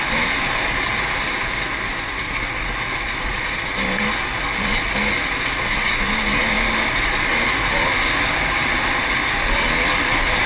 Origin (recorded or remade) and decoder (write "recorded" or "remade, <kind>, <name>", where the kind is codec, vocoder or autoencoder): recorded